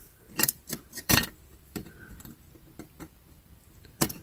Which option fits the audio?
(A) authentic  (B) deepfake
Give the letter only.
B